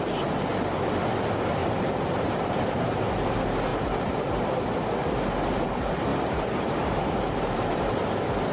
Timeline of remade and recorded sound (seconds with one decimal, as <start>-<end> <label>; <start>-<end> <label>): 0.0-1.6 recorded; 1.6-3.3 remade; 3.3-3.7 recorded; 3.7-4.3 remade; 4.3-6.1 recorded; 6.1-7.6 remade; 7.6-8.5 recorded